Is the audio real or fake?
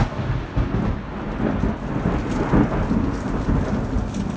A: real